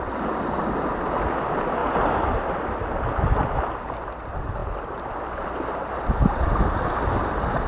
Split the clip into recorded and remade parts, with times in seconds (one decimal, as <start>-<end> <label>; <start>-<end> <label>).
0.0-7.7 recorded